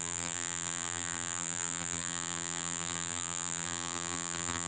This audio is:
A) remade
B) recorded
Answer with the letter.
A